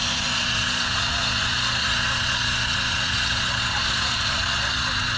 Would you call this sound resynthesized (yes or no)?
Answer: yes